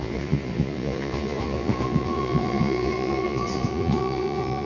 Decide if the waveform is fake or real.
fake